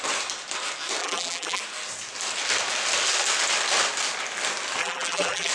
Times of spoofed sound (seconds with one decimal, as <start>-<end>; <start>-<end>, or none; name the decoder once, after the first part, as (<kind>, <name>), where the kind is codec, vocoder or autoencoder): 1.0-1.6 (vocoder, BigVGAN v2); 4.8-5.5